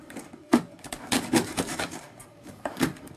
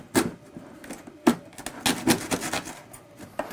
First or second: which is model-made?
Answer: first